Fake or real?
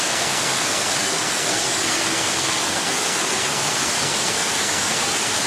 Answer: fake